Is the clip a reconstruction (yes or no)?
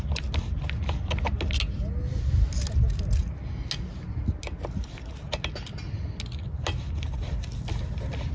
no